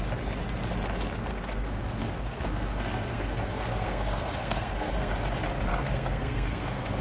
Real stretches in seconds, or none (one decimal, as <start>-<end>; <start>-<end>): 0.0-1.3; 5.1-5.7